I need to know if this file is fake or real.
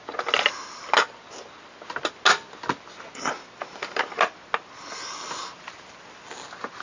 real